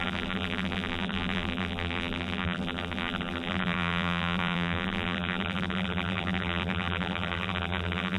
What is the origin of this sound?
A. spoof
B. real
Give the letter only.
A